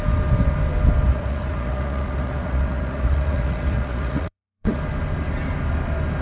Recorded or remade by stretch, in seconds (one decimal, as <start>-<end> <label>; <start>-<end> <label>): 0.0-1.1 recorded; 1.1-4.8 remade; 4.8-6.2 recorded